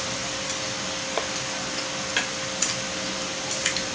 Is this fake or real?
real